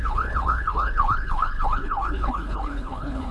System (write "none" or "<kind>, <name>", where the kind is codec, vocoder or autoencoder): codec, HILCodec